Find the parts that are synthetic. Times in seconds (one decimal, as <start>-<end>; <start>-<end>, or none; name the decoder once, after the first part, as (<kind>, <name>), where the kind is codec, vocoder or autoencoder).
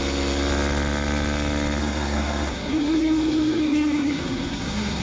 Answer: 1.8-5.0 (codec, SNAC)